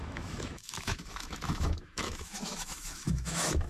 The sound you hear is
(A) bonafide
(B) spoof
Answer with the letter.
B